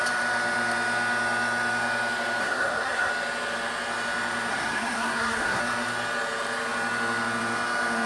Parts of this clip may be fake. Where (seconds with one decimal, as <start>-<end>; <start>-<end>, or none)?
2.4-3.1; 4.5-5.6

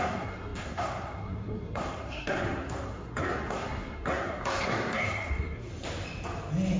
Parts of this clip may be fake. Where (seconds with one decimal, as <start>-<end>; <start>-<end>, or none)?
0.0-5.7

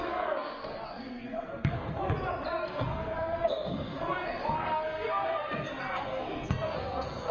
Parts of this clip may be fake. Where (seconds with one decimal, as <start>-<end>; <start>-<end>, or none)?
0.0-2.0; 2.5-7.3

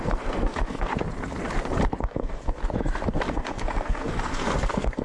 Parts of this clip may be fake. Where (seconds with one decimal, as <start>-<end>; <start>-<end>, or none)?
0.0-0.9; 2.0-2.6; 3.3-5.0

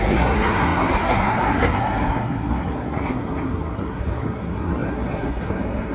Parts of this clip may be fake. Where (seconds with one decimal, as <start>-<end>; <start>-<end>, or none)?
0.0-5.9

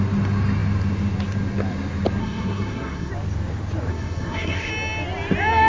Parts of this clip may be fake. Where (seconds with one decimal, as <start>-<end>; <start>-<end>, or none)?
2.2-3.1; 3.9-4.7

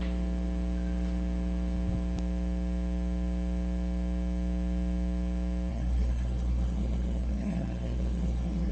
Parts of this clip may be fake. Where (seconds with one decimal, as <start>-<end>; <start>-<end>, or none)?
5.7-8.7

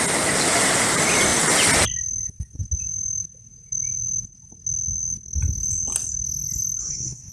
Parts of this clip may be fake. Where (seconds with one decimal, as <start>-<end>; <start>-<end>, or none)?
6.8-7.3